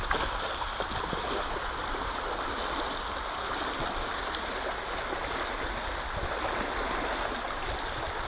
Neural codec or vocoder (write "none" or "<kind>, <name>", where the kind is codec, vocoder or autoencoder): none